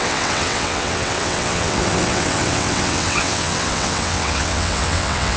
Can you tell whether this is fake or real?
fake